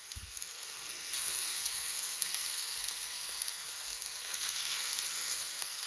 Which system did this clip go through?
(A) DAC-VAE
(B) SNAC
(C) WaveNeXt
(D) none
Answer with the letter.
B